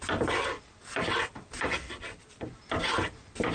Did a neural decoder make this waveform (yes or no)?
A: no